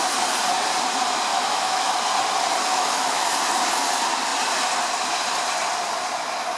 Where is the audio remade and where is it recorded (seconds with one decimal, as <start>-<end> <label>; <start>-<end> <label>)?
0.0-1.3 recorded; 1.3-2.0 remade; 2.0-2.7 recorded; 2.7-3.3 remade; 3.3-6.6 recorded